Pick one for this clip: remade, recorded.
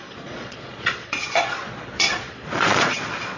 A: remade